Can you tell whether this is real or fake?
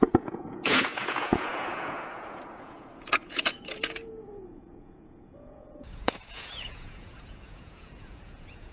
fake